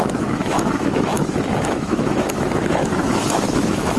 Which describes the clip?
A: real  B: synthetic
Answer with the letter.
B